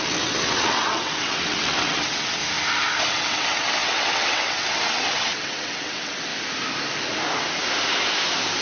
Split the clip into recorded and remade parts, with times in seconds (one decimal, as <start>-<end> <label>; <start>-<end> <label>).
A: 0.0-2.4 remade; 2.4-3.1 recorded; 3.1-6.3 remade; 6.3-8.6 recorded